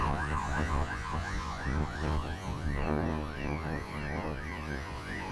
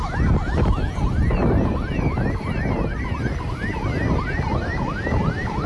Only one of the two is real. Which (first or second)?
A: second